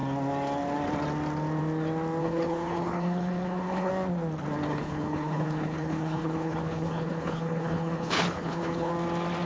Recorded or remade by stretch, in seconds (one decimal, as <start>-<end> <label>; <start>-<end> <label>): 0.0-2.2 recorded; 2.2-3.9 remade; 3.9-4.7 recorded; 4.7-8.9 remade; 8.9-9.5 recorded